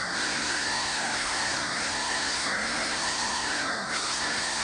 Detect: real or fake fake